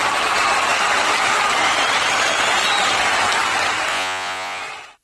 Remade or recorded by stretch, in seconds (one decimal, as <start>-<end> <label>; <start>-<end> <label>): 0.0-3.9 recorded; 3.9-4.6 remade; 4.6-5.0 recorded